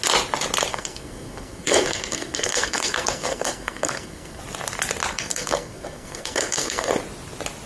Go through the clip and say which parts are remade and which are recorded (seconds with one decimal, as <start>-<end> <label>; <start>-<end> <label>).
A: 0.0-0.7 recorded; 0.7-4.4 remade; 4.4-5.1 recorded; 5.1-6.9 remade; 6.9-7.7 recorded